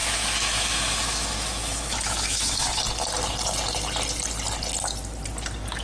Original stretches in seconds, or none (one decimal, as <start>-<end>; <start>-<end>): 2.8-5.8